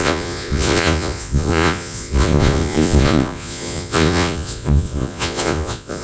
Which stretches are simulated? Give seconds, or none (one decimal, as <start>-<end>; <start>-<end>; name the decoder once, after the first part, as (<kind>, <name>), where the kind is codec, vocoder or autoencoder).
0.0-6.0 (vocoder, Vocos)